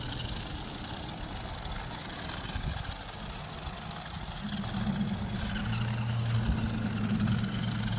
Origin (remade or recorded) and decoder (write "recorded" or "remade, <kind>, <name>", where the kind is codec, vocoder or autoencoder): recorded